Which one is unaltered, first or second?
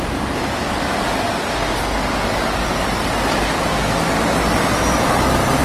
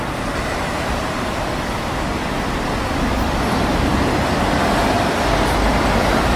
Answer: first